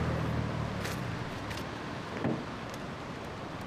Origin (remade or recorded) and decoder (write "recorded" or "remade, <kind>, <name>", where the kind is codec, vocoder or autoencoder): recorded